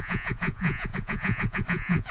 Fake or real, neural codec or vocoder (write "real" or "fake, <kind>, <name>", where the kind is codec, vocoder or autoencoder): fake, vocoder, Vocos